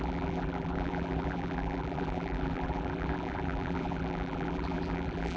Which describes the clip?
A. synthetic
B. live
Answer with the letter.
A